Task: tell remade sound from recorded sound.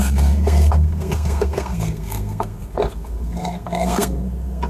remade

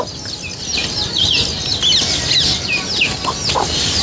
recorded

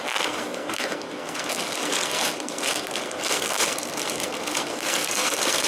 remade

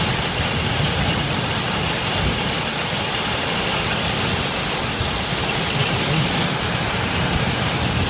recorded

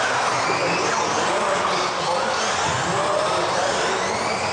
recorded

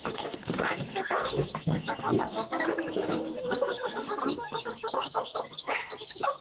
remade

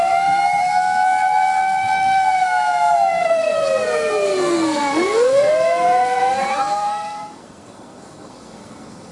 remade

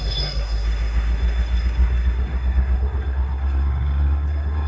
remade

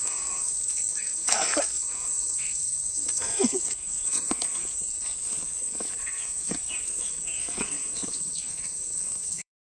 remade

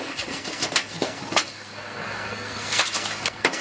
remade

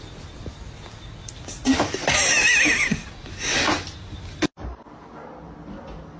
recorded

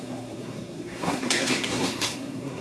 remade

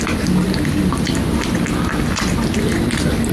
recorded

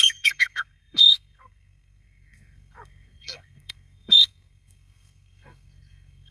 remade